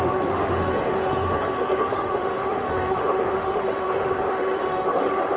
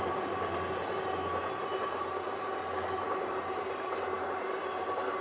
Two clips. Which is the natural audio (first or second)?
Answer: second